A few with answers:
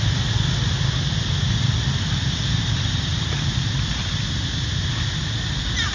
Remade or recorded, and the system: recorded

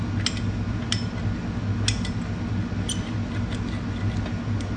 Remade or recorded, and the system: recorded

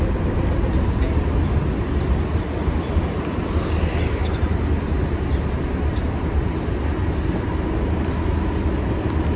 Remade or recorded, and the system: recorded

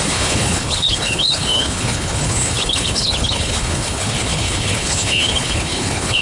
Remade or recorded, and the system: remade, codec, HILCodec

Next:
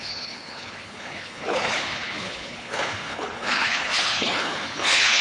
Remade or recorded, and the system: remade, codec, HILCodec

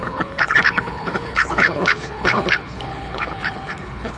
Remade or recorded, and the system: remade, codec, HILCodec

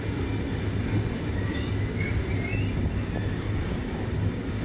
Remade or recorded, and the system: recorded